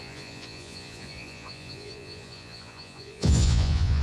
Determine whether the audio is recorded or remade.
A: remade